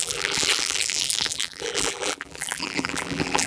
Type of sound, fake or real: fake